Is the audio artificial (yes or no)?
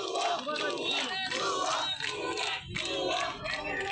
no